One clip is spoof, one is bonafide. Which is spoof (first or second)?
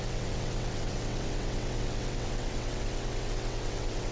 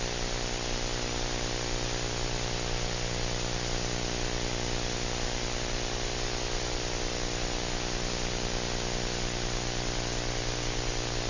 first